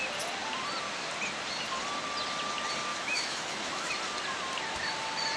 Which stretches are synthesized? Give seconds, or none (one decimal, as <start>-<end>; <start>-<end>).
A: 2.9-3.9